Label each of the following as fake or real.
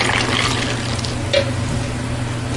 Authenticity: real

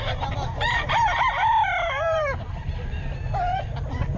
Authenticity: fake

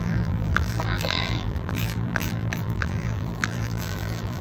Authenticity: fake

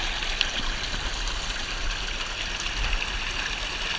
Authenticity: real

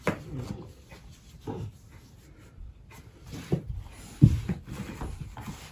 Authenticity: real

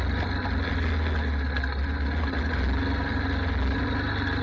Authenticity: real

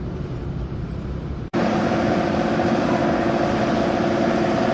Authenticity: fake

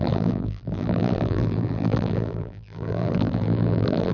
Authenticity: fake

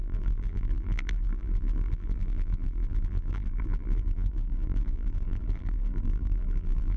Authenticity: fake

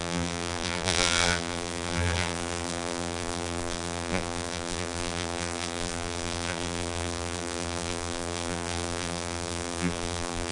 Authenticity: fake